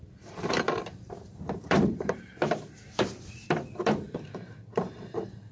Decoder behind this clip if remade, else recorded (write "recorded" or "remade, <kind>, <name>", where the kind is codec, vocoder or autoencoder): remade, vocoder, BigVGAN v2